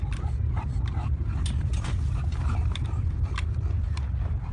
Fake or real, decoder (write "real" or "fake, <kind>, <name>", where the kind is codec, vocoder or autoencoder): real